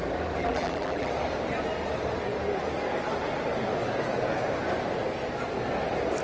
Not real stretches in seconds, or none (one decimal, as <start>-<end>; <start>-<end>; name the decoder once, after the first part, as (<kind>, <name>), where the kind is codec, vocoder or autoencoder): 0.4-1.1 (vocoder, BigVGAN v2)